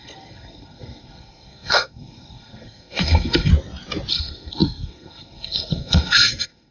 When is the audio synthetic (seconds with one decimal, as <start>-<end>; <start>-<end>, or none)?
0.0-3.5; 4.1-6.7